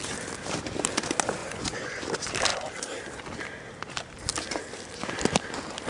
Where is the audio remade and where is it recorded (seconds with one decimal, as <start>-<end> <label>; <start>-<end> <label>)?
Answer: 0.0-1.4 recorded; 1.4-2.0 remade; 2.0-5.9 recorded